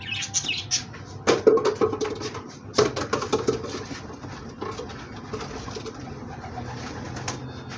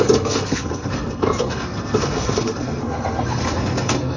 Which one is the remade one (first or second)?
second